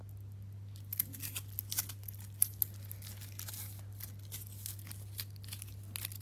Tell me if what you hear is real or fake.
real